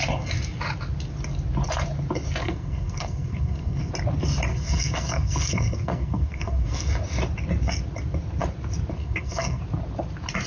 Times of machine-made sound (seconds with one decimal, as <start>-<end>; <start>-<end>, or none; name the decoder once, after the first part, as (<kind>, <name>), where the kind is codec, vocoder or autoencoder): 2.4-3.9 (codec, SNAC); 4.5-6.9; 9.0-9.6